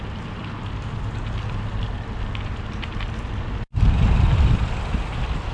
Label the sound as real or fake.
real